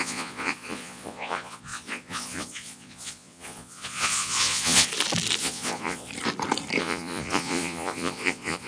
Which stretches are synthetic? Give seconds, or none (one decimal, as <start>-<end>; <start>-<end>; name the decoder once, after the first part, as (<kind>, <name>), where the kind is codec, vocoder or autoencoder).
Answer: 0.0-4.9 (vocoder, Vocos); 5.4-6.1; 6.8-8.7